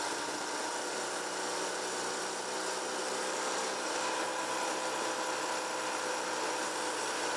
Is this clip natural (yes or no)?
yes